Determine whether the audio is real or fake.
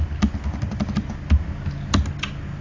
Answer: real